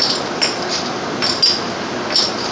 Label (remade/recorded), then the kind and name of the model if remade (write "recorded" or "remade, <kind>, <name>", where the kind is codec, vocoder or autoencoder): recorded